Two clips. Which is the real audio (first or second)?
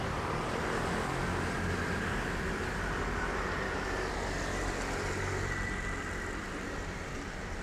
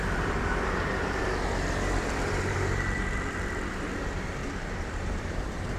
first